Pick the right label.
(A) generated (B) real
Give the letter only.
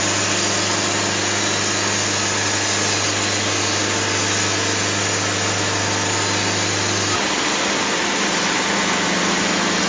B